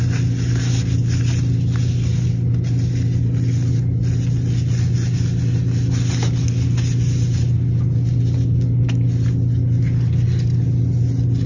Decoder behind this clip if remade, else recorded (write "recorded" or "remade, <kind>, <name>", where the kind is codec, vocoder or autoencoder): recorded